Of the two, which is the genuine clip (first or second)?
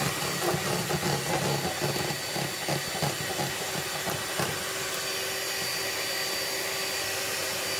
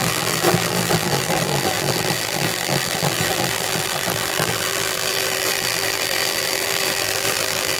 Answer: first